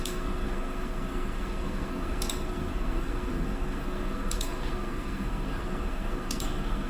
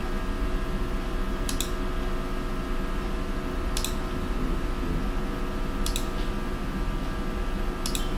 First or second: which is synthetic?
first